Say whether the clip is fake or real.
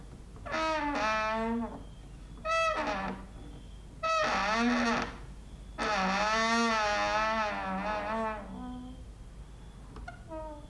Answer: real